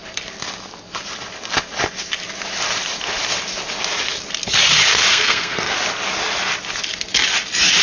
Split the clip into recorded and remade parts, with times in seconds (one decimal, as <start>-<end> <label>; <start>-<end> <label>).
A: 0.0-5.1 recorded; 5.1-5.7 remade; 5.7-7.8 recorded